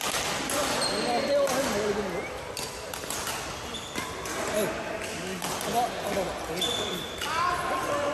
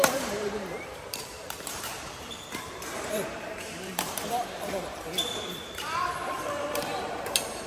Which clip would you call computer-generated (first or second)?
second